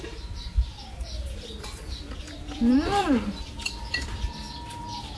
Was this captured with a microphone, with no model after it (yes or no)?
no